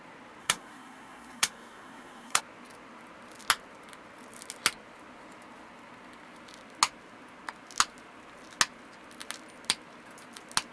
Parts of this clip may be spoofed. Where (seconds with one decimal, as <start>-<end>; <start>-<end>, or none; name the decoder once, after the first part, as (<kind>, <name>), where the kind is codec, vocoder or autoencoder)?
0.4-2.4 (codec, SNAC)